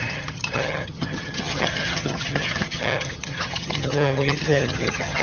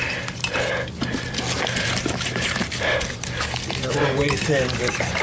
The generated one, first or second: first